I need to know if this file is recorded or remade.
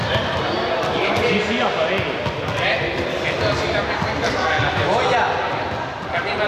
recorded